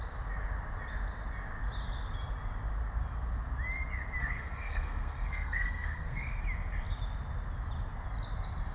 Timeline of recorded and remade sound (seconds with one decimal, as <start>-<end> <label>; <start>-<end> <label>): 0.0-4.2 recorded; 4.2-6.4 remade; 6.4-8.7 recorded